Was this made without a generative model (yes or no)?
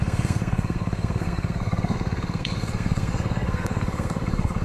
no